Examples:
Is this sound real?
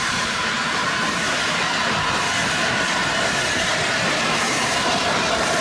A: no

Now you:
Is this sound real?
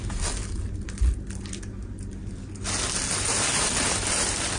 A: yes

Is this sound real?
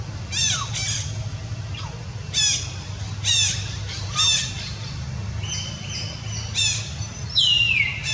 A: yes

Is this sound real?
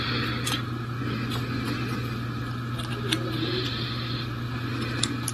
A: yes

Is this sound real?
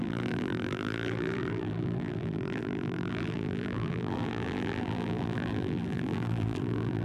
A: no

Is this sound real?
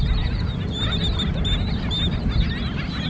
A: yes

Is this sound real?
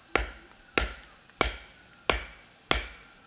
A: yes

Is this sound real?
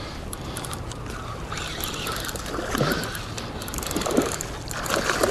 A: yes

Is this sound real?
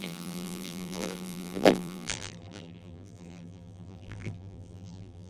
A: no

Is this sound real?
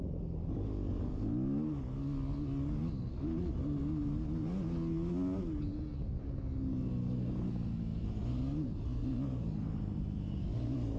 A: yes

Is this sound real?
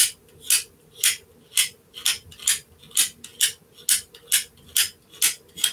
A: yes